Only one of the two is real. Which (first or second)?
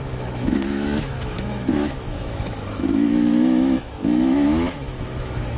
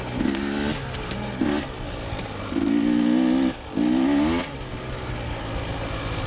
second